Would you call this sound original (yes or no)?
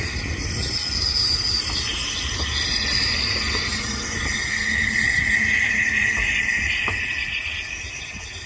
yes